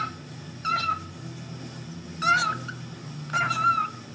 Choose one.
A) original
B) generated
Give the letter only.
A